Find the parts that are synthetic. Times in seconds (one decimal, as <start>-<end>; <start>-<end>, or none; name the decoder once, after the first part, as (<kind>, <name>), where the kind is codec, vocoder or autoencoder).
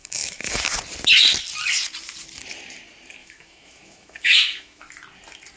0.0-0.6 (autoencoder, DAC-VAE); 3.2-4.8